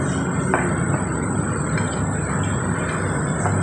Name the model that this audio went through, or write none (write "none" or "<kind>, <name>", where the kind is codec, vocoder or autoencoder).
none